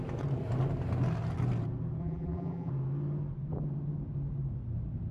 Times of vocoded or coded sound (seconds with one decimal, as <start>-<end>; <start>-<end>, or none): 2.0-2.7